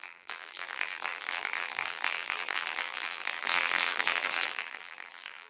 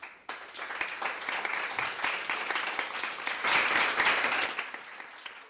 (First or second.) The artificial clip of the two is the first